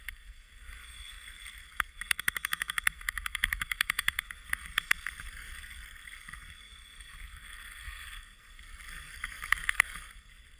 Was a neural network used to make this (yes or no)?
yes